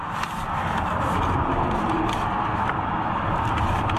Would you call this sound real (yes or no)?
yes